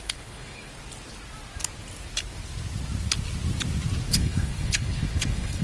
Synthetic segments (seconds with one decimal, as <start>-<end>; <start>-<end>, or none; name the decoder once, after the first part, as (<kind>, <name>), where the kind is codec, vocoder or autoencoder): 0.0-0.7 (codec, HILCodec); 4.1-5.6